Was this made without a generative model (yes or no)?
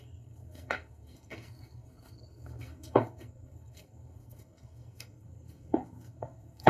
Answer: no